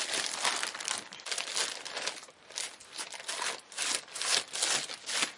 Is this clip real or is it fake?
real